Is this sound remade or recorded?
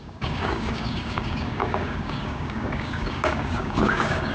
remade